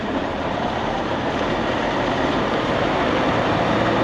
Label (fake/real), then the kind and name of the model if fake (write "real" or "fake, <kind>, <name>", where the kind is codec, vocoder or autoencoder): fake, vocoder, BigVGAN v2